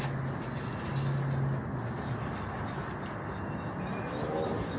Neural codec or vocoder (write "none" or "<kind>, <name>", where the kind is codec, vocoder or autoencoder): none